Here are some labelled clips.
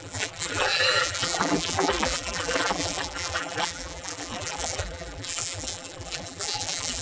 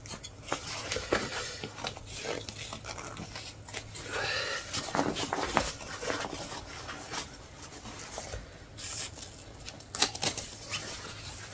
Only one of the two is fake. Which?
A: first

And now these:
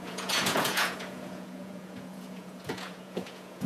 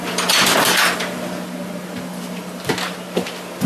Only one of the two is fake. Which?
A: first